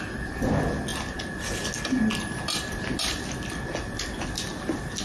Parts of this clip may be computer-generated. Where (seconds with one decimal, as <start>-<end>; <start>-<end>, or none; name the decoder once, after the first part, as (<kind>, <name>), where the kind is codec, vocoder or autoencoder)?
none